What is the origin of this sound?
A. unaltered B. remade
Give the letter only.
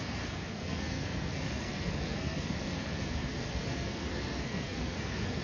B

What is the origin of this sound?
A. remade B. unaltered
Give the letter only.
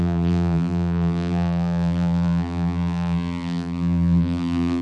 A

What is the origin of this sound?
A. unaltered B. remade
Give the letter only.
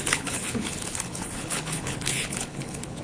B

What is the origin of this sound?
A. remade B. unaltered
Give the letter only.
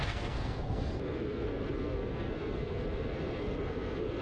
A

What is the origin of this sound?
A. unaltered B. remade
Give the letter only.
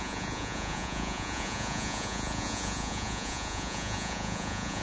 B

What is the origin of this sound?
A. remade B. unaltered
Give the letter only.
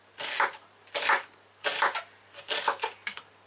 B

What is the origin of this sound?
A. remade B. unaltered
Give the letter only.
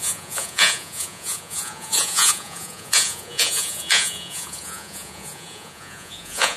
A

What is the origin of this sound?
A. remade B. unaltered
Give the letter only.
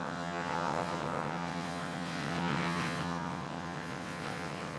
A